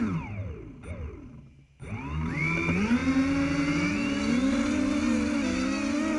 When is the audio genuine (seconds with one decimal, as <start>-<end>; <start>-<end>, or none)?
0.0-6.2